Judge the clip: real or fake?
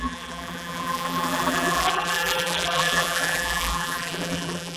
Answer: fake